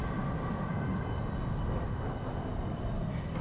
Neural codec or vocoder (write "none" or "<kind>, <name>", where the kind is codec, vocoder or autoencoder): none